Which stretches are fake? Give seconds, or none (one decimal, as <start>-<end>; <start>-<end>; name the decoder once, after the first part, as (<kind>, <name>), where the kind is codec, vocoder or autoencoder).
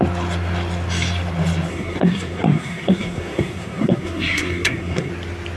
1.7-5.1 (codec, SNAC)